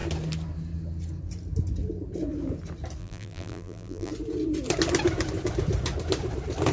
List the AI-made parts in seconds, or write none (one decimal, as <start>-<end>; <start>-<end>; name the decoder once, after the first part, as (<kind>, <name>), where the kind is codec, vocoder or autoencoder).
3.0-4.1 (vocoder, BigVGAN v2)